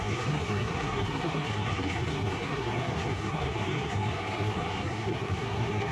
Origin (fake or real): fake